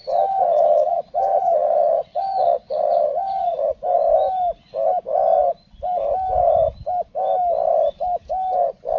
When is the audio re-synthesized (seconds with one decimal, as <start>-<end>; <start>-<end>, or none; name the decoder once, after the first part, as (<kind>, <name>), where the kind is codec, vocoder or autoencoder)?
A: 0.0-3.6 (vocoder, WaveNeXt)